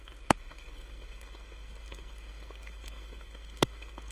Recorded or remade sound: remade